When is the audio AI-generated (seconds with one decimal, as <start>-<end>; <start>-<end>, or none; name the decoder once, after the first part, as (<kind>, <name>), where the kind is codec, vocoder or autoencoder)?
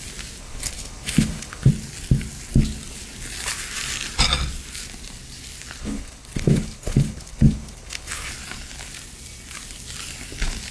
0.4-1.7 (codec, HILCodec); 5.8-8.3